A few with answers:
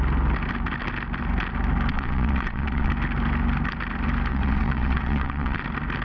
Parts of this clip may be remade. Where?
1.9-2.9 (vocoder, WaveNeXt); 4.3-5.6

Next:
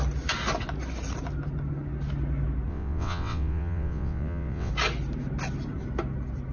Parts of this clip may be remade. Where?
2.7-4.7 (vocoder, WaveNeXt)